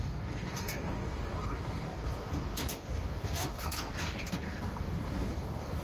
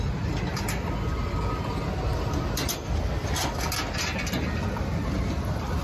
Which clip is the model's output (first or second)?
first